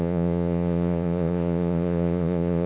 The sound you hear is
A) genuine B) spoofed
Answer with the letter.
B